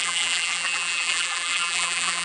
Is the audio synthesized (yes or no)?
yes